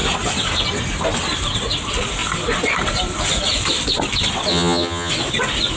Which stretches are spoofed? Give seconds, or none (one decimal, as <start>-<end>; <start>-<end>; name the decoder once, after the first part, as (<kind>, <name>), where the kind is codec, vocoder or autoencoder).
4.5-5.1 (vocoder, HiFi-GAN)